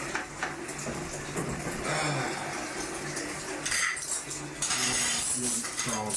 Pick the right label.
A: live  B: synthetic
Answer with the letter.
A